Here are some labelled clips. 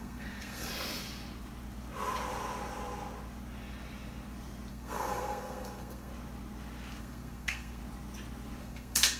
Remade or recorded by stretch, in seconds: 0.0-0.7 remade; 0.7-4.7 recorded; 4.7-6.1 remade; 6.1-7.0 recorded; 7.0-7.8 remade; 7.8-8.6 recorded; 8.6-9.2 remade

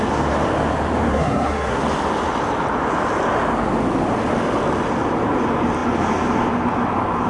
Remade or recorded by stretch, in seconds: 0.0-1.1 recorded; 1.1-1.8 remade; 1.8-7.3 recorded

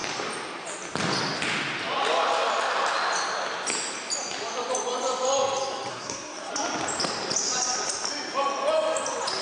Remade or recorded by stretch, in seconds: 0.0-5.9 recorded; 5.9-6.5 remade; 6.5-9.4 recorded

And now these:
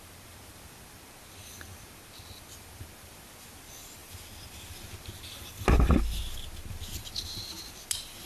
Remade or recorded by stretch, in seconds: 0.0-8.3 recorded